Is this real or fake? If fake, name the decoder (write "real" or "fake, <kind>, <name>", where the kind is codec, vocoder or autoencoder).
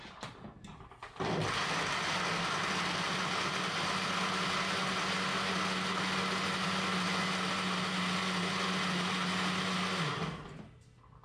real